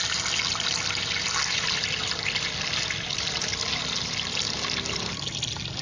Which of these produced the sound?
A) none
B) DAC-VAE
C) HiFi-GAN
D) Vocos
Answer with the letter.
A